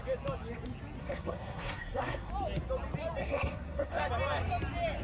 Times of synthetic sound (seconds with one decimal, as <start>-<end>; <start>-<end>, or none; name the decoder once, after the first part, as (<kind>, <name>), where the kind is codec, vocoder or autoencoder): 1.0-2.3 (codec, SNAC); 3.2-4.0